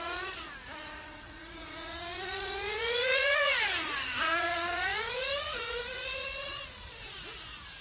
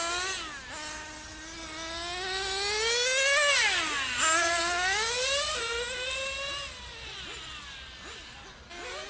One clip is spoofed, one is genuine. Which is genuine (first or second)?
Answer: second